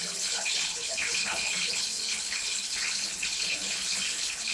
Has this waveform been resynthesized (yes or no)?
yes